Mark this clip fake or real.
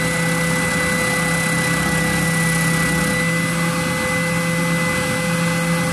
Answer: real